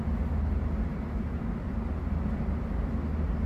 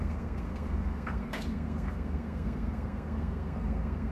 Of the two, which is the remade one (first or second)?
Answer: second